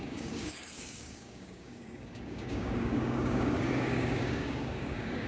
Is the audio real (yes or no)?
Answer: no